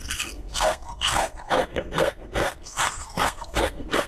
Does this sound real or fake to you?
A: fake